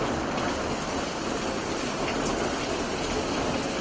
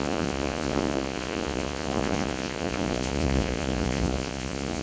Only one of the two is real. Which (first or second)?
first